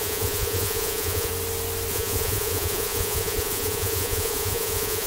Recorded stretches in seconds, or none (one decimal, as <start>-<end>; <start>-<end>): 1.3-1.9